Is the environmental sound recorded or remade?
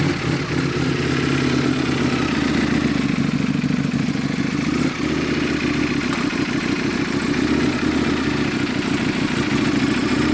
recorded